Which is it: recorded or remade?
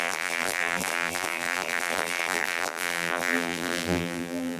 remade